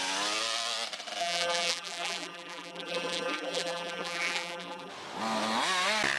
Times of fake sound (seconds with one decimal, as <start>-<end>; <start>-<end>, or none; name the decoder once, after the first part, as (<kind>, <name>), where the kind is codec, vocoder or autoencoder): 1.2-4.9 (vocoder, BigVGAN v2)